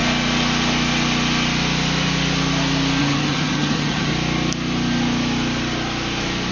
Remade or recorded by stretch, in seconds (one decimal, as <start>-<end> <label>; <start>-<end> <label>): 0.0-3.0 recorded; 3.0-4.1 remade; 4.1-6.5 recorded